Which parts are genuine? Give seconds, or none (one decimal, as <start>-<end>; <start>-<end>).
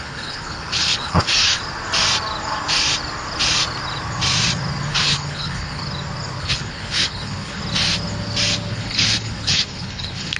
1.6-4.9; 5.8-6.4; 7.6-8.7